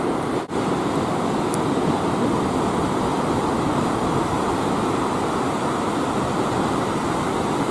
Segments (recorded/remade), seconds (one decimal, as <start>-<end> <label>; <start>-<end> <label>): 0.0-7.7 remade